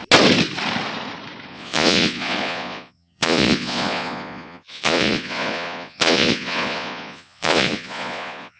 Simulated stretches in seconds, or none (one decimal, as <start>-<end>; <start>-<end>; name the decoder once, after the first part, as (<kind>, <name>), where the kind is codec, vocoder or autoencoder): 1.5-8.6 (vocoder, Vocos)